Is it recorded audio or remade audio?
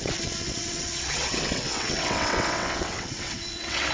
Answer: remade